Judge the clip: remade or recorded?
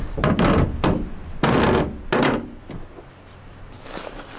recorded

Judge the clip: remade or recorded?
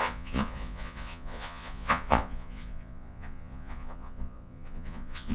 remade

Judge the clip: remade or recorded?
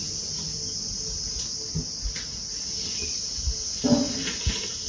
recorded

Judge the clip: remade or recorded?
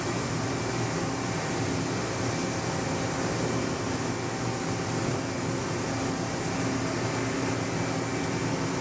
recorded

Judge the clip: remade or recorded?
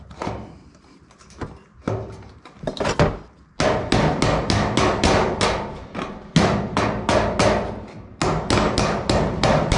recorded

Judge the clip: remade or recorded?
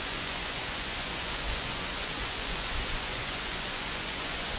remade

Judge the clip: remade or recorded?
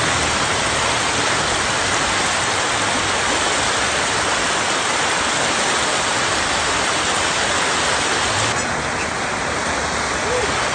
recorded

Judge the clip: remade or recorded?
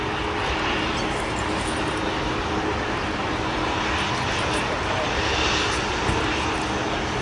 recorded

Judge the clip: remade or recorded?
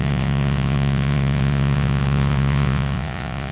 remade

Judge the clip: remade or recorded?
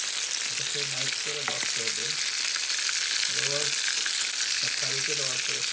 recorded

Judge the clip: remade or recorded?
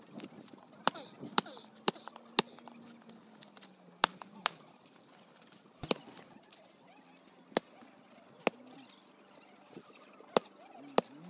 recorded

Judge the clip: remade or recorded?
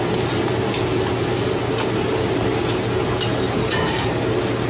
recorded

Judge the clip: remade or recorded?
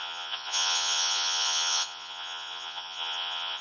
remade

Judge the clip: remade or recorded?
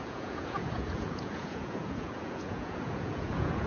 remade